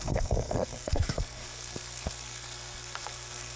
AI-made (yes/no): yes